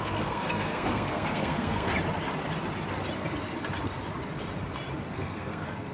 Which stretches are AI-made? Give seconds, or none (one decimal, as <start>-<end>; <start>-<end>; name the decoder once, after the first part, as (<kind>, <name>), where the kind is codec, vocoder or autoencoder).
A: 0.0-1.9 (codec, SNAC); 5.1-5.9